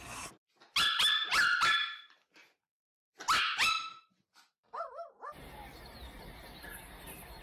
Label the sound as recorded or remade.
recorded